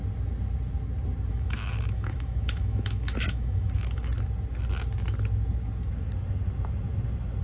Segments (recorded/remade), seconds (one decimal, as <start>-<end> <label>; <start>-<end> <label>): 0.0-1.3 recorded; 1.3-4.1 remade; 4.1-7.4 recorded

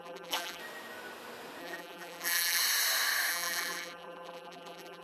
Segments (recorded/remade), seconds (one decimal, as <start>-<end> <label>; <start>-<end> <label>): 0.0-0.6 remade; 0.6-1.6 recorded; 1.6-2.6 remade; 2.6-3.3 recorded; 3.3-5.0 remade

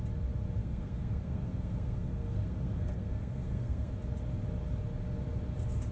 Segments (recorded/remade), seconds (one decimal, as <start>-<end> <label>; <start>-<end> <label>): 0.0-0.6 recorded; 0.6-3.9 remade; 3.9-5.9 recorded

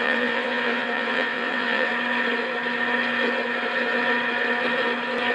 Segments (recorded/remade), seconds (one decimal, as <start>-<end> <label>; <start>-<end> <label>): 0.0-1.9 remade; 1.9-5.3 recorded

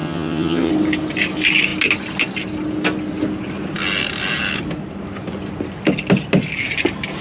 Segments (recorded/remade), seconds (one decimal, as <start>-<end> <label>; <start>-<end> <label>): 0.0-0.7 remade; 0.7-7.2 recorded

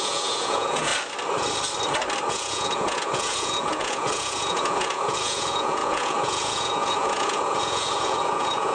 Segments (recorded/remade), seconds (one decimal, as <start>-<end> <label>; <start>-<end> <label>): 0.0-0.9 remade; 0.9-2.3 recorded; 2.3-8.7 remade